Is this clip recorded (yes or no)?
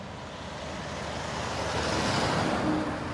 yes